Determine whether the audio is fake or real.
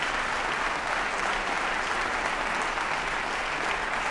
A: real